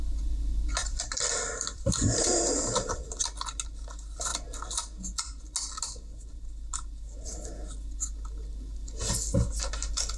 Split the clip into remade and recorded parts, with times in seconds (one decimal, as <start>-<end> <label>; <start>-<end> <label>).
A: 0.0-0.8 recorded; 0.8-3.2 remade; 3.2-10.2 recorded